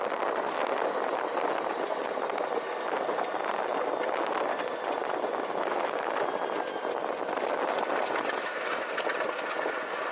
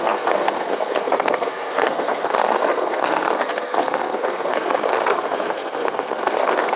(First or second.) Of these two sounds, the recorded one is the first